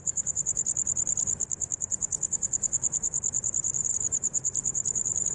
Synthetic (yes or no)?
yes